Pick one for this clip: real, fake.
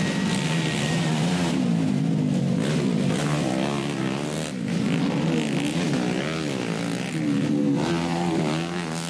real